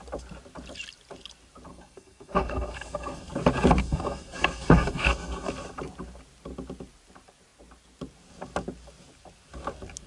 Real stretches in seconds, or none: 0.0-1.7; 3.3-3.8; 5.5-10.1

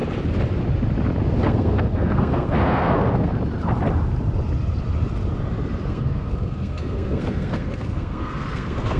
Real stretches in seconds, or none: 0.0-1.4; 3.3-5.9

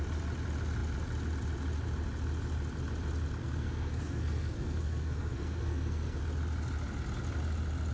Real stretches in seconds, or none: 0.0-3.4; 6.2-7.9

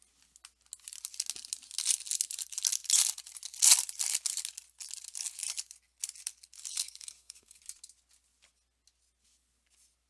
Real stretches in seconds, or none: 0.0-6.7; 7.6-10.1